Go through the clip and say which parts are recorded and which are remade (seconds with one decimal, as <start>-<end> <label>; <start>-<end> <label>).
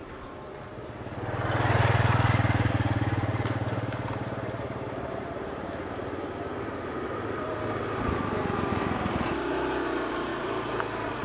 0.0-11.2 recorded